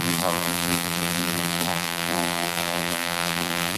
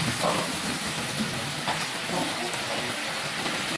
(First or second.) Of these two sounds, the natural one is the second